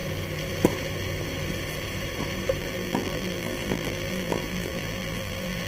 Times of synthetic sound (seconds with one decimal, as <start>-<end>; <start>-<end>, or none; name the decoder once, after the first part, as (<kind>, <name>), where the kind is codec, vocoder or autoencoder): 2.6-5.7 (vocoder, BigVGAN v2)